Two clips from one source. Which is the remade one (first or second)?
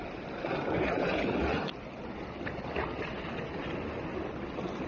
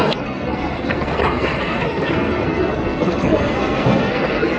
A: second